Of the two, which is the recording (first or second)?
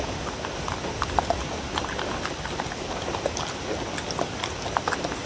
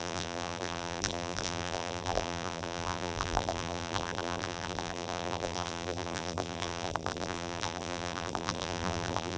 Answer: first